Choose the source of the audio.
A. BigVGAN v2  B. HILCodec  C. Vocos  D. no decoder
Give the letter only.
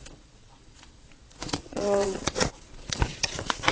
C